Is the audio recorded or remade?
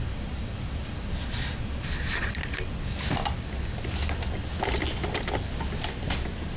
recorded